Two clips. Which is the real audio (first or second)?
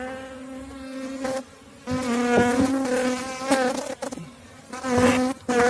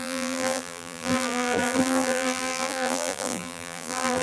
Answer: first